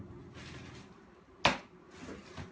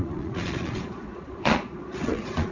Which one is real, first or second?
first